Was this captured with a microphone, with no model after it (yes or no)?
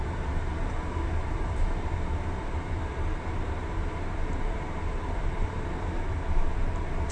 no